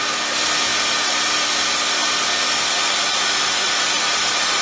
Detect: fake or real real